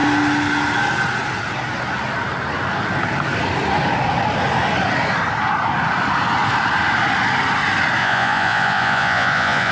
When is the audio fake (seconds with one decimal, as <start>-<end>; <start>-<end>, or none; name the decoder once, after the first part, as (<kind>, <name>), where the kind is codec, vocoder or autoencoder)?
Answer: 8.0-9.7 (vocoder, Vocos)